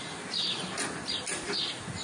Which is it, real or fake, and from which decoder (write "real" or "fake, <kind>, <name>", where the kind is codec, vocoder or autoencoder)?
real